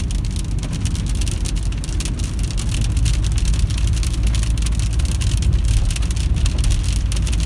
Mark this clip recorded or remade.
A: recorded